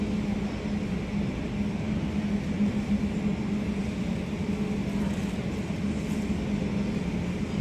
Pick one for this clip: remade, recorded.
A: recorded